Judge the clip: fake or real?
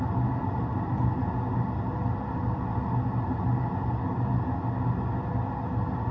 real